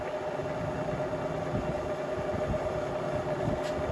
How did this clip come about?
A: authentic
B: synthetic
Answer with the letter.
A